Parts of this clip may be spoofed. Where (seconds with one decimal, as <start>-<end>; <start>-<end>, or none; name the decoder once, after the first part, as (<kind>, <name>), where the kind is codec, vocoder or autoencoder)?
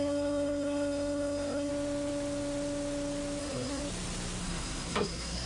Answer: 0.0-1.7 (codec, SNAC); 3.4-3.8; 4.4-5.5